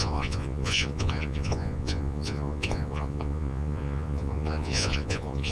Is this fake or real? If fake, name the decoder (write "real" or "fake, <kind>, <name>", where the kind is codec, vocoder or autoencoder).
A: fake, vocoder, Vocos